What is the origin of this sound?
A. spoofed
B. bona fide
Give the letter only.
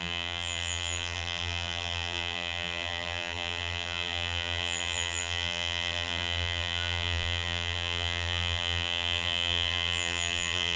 A